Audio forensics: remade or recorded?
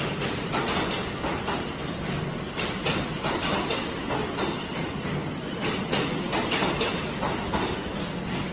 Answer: recorded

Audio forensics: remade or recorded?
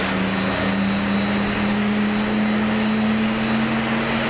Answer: recorded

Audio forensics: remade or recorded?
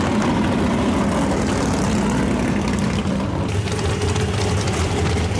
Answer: recorded